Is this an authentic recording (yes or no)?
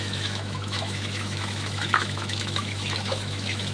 no